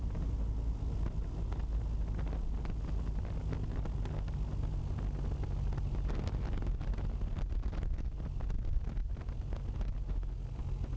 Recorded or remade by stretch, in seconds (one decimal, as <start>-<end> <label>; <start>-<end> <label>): 0.0-11.0 recorded